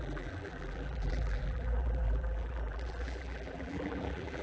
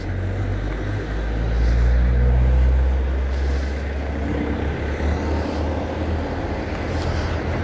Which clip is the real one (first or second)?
second